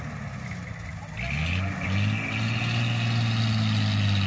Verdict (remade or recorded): recorded